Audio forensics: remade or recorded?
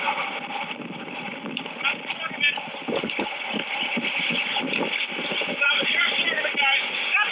remade